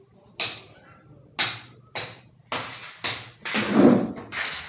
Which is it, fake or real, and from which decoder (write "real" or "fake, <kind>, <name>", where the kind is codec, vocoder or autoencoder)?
real